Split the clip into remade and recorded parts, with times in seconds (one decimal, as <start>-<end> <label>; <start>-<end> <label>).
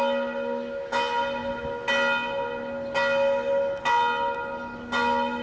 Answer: 0.0-5.4 recorded